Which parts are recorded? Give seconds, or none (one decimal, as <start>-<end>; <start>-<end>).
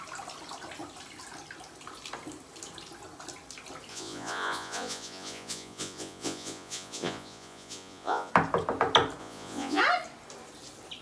0.0-3.9; 8.3-9.2; 9.8-11.0